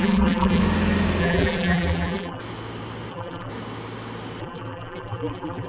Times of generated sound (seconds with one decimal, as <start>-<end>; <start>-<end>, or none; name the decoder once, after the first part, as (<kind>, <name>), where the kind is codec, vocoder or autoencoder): 0.0-0.6 (vocoder, BigVGAN v2); 1.2-2.4; 3.1-3.5; 4.4-5.7